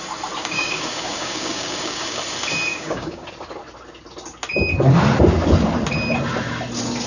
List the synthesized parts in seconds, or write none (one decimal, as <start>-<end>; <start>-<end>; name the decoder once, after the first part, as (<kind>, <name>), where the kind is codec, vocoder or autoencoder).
0.4-2.2 (codec, DAC); 2.7-3.3